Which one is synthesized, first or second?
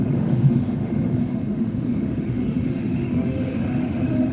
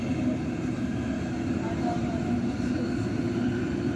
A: first